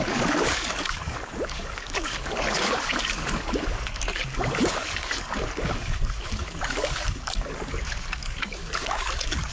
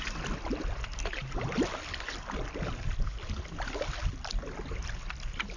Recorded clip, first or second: second